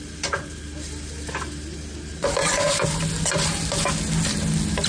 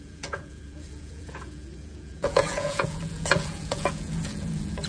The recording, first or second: first